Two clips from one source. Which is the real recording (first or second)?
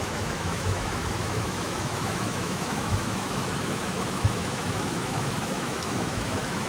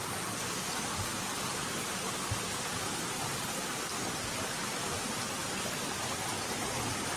second